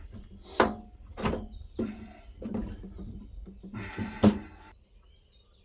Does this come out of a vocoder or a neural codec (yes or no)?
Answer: no